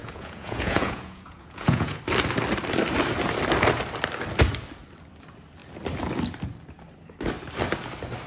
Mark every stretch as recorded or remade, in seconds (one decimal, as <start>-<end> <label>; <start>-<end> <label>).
0.0-2.0 remade; 2.0-8.3 recorded